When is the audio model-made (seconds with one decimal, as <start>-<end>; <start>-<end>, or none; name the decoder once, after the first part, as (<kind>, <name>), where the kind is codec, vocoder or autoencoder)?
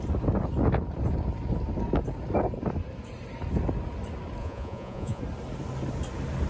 4.4-5.2 (vocoder, Vocos)